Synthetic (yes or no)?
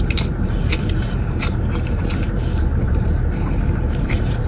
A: yes